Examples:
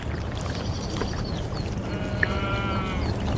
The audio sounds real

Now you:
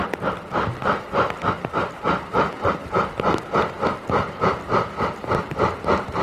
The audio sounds real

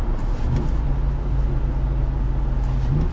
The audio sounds real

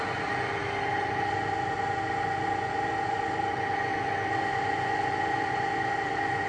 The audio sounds real